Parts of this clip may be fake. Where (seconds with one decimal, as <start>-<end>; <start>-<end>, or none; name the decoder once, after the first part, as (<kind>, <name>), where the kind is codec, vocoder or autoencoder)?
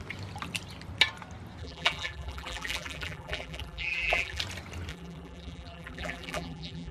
1.6-4.4 (vocoder, BigVGAN v2); 4.9-6.9